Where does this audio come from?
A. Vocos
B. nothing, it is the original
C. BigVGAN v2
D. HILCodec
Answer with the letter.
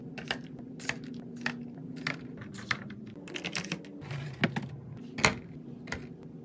B